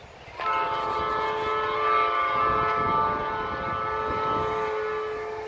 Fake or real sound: real